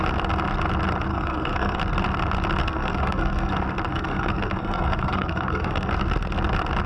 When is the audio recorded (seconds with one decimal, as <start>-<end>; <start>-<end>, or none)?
0.0-1.1; 1.8-2.6; 3.5-3.9; 5.9-6.9